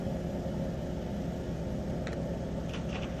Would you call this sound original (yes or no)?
yes